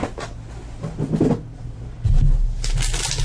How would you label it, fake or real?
real